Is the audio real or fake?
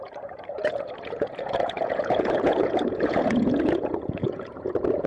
fake